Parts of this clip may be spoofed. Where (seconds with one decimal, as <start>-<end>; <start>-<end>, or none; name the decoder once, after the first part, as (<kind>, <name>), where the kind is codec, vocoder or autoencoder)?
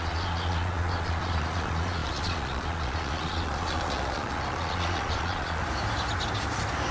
0.0-5.6 (vocoder, Vocos)